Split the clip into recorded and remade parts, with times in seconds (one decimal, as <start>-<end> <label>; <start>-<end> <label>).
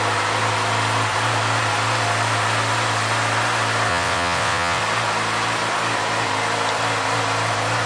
0.0-3.9 recorded; 3.9-4.8 remade; 4.8-7.9 recorded